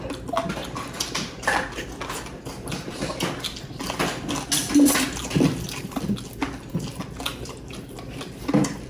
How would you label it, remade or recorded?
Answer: recorded